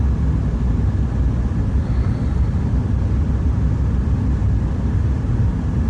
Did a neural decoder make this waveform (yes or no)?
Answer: no